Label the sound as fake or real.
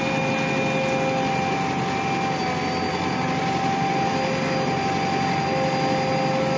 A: real